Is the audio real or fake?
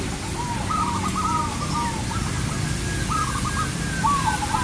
real